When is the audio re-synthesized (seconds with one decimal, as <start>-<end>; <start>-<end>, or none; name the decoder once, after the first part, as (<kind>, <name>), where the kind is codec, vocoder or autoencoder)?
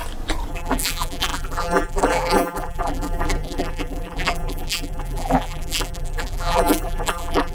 0.5-7.5 (vocoder, BigVGAN v2)